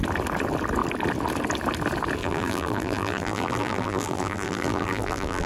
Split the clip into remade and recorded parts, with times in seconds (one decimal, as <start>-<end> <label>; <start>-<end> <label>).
0.0-2.2 recorded; 2.2-5.5 remade